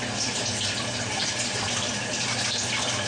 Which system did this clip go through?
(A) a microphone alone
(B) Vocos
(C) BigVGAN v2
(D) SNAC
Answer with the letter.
A